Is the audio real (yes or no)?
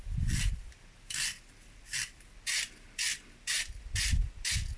yes